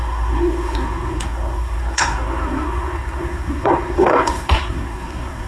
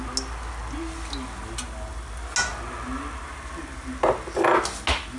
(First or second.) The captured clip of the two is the second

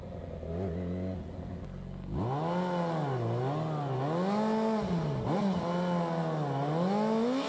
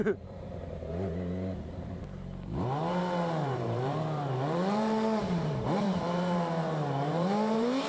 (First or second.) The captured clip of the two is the first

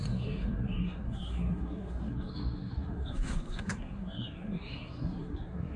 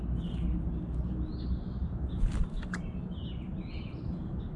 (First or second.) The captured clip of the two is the second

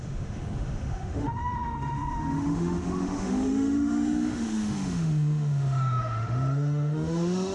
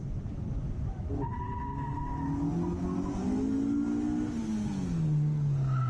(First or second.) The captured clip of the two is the second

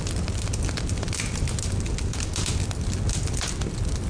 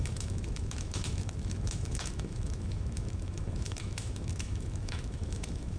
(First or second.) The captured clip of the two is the first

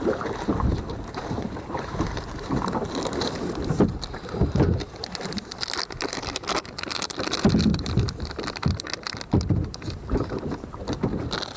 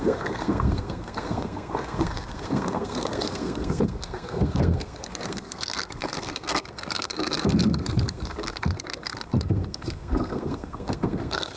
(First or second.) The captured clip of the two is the first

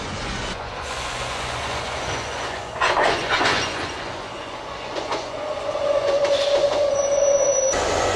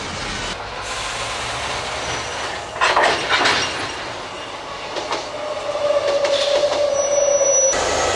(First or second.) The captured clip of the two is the second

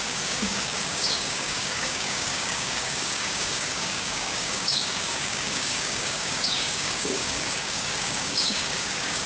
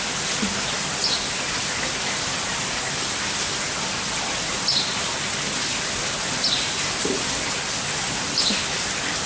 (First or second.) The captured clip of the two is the second